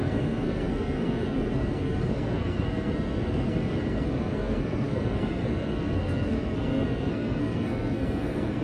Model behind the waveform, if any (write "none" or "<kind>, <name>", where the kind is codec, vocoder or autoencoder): codec, SNAC